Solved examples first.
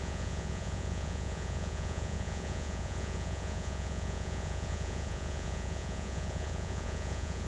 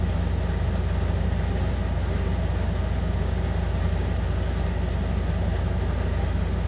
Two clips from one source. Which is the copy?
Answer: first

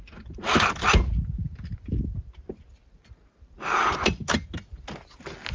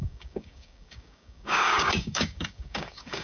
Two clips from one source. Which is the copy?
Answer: second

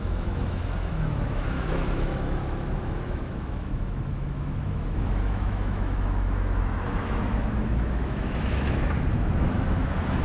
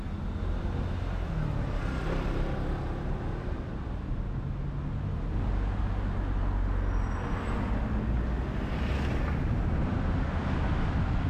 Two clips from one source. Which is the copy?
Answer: first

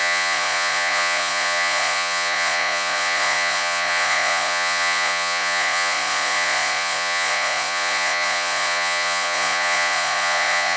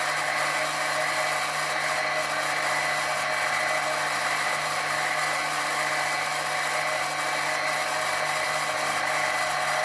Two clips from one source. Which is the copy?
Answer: first